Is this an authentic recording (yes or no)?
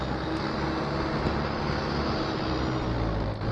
yes